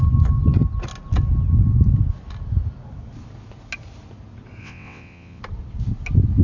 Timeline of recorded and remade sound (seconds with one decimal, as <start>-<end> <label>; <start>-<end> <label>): 0.0-4.6 recorded; 4.6-5.4 remade; 5.4-6.4 recorded